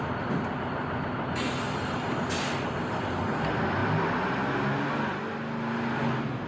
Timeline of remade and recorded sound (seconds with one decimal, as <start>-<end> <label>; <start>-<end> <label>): 0.0-6.5 recorded